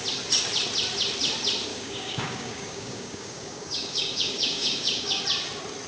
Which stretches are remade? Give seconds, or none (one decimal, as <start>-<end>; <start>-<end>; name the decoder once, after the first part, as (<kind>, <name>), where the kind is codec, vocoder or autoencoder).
1.7-5.2 (codec, DAC)